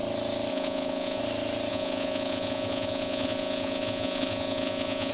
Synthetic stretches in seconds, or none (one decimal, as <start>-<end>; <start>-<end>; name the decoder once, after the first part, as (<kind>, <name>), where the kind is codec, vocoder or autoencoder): 0.5-1.2 (vocoder, Vocos); 1.7-5.1